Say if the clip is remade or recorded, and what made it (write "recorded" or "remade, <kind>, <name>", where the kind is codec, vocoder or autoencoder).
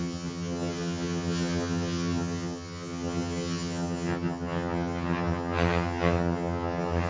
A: remade, vocoder, HiFi-GAN